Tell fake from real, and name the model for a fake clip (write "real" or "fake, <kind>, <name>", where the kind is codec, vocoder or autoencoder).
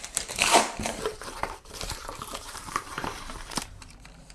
fake, vocoder, BigVGAN v2